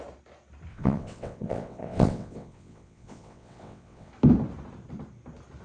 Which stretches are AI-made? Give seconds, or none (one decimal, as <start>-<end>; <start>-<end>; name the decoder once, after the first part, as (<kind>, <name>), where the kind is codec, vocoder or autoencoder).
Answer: 0.7-4.1 (vocoder, WaveNeXt)